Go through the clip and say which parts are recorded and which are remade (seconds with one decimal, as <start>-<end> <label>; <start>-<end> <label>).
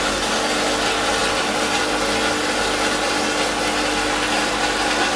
0.0-5.2 recorded